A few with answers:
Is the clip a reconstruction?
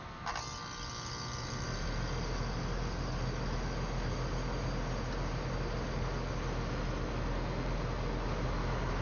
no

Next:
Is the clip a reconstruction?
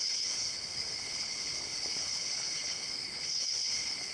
yes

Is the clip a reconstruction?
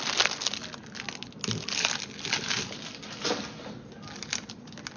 no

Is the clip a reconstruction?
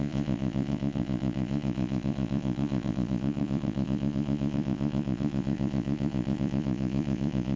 yes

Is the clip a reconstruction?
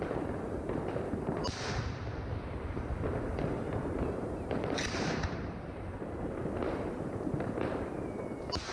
yes